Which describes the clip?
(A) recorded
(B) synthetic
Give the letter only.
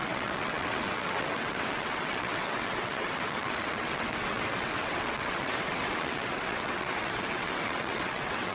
B